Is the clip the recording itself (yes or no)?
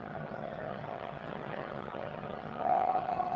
no